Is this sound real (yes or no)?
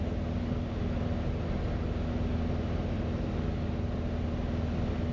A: yes